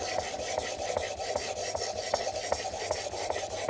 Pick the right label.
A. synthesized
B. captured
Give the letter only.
B